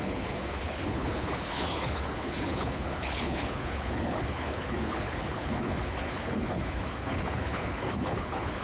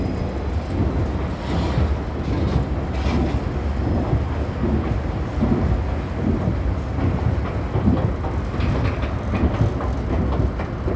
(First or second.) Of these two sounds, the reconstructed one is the first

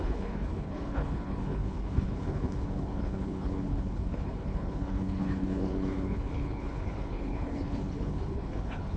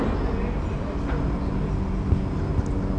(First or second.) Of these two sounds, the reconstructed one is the first